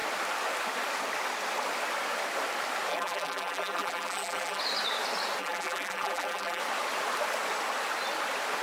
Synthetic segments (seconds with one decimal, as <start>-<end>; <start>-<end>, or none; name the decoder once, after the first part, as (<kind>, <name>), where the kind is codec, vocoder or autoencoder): 2.9-4.6 (vocoder, BigVGAN v2); 5.4-6.6